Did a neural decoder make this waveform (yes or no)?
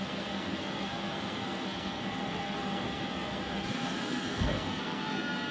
yes